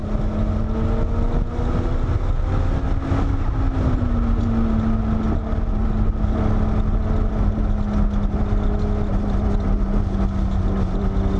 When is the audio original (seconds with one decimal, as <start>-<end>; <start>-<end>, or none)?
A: 0.0-11.4